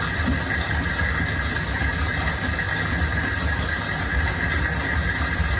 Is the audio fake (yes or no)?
no